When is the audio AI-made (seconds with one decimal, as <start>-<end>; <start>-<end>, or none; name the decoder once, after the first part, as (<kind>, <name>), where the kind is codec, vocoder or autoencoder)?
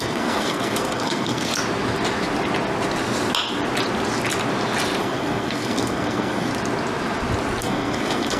0.0-1.5 (codec, SNAC); 5.0-6.5; 7.6-8.4